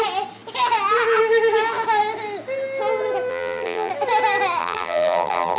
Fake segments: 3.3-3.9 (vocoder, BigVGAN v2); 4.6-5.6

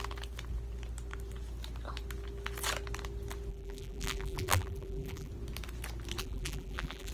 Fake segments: 3.5-5.3 (vocoder, BigVGAN v2); 6.2-7.1

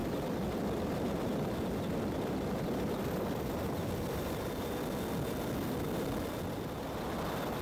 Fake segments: 0.0-4.2 (vocoder, BigVGAN v2)

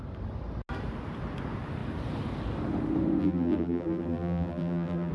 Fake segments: 3.2-5.1 (vocoder, BigVGAN v2)

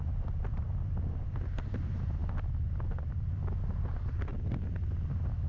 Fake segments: 0.0-4.3 (vocoder, BigVGAN v2)

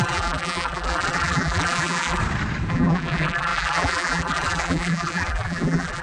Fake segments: 0.0-2.2 (vocoder, BigVGAN v2); 2.7-6.0